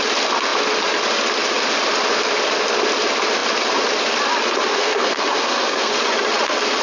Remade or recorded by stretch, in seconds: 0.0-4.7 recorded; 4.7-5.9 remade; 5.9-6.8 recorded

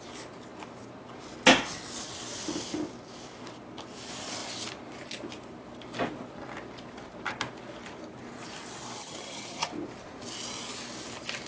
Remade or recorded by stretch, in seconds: 0.0-9.0 recorded; 9.0-9.7 remade; 9.7-11.5 recorded